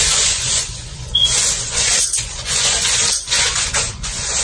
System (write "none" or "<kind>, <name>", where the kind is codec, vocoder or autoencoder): vocoder, Vocos